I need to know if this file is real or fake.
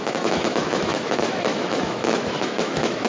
fake